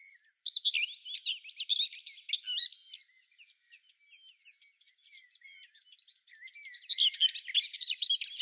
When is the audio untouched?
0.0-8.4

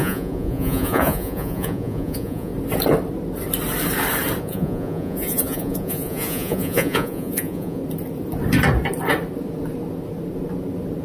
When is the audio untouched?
2.5-4.4; 7.8-11.0